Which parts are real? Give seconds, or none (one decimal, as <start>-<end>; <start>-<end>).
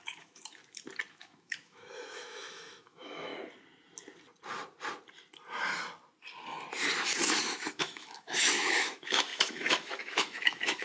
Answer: 0.6-1.1; 3.3-7.4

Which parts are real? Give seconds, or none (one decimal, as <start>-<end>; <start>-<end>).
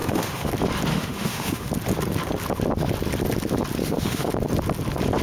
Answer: 0.5-0.9; 1.7-3.8; 4.3-5.2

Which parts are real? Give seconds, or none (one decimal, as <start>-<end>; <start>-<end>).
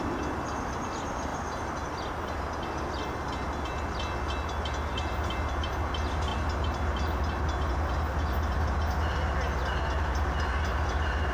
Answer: 0.0-11.3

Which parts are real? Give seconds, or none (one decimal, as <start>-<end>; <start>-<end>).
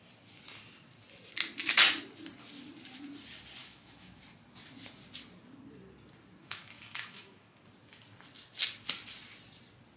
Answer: 0.0-3.6; 4.2-6.4; 7.6-10.0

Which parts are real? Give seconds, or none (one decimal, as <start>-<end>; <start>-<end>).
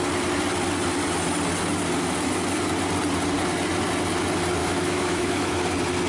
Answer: 0.0-4.6; 5.6-6.1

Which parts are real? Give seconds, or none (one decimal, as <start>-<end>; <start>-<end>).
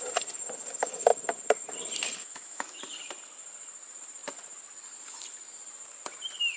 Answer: 0.0-2.2; 2.8-6.6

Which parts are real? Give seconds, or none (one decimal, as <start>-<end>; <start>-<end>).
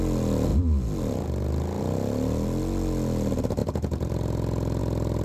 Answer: 0.0-5.2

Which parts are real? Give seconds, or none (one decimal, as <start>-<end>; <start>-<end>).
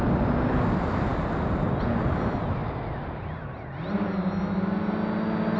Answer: 0.0-5.6